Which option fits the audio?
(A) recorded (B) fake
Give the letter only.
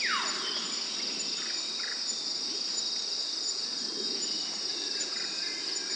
A